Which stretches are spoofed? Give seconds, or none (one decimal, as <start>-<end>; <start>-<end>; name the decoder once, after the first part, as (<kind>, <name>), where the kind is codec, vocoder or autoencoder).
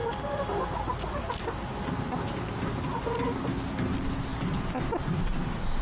none